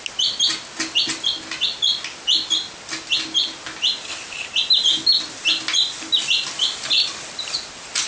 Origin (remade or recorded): recorded